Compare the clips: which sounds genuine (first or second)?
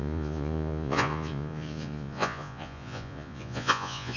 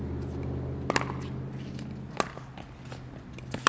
second